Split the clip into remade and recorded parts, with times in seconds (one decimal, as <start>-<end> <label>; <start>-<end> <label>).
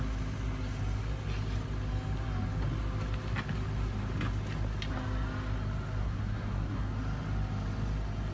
0.0-6.0 recorded; 6.0-6.9 remade; 6.9-8.3 recorded